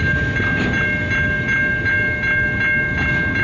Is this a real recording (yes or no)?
yes